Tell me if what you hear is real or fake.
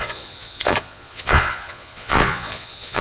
fake